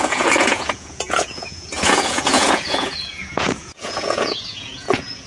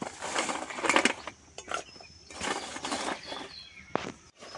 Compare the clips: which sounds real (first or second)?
second